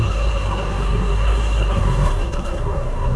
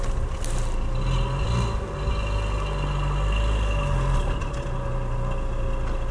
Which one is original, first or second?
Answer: second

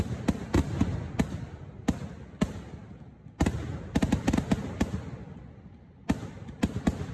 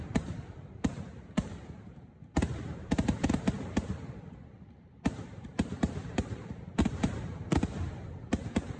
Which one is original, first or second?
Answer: first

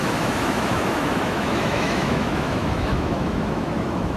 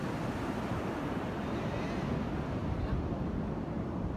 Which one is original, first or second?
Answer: second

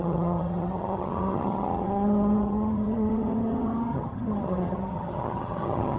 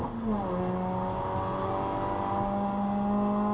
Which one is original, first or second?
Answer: second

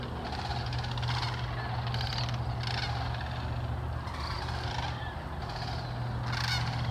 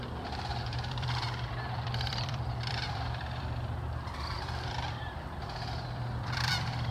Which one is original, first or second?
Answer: first